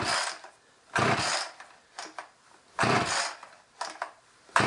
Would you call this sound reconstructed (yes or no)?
no